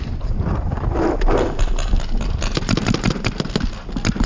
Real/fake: real